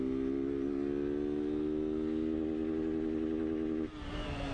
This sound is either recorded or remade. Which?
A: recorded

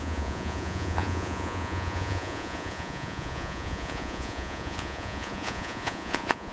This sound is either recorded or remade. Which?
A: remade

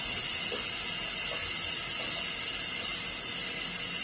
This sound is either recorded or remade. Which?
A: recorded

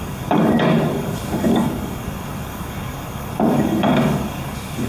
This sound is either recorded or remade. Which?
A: remade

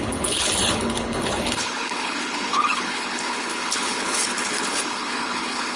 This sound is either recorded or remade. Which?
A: remade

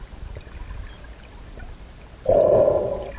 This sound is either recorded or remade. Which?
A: recorded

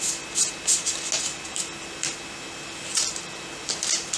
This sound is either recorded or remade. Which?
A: recorded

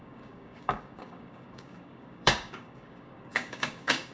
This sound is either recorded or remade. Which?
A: remade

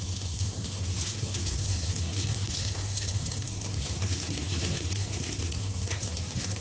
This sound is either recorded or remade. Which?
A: remade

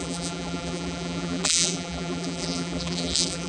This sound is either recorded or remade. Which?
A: remade